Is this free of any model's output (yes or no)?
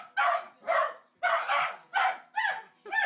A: yes